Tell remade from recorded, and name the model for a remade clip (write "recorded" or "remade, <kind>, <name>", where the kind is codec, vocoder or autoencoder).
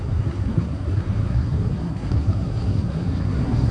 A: remade, codec, SNAC